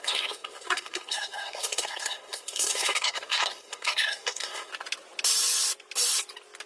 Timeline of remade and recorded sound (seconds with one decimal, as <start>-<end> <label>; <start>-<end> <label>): 0.0-4.7 remade; 4.7-6.7 recorded